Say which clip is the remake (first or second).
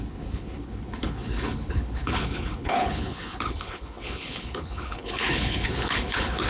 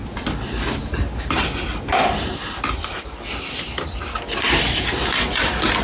first